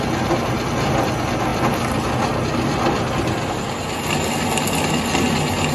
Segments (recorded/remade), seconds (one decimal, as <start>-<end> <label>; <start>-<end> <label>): 0.0-5.7 recorded